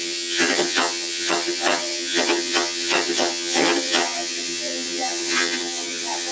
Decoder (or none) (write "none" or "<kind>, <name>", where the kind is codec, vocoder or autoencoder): vocoder, HiFi-GAN